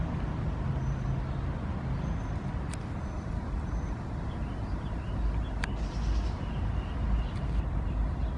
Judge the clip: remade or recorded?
recorded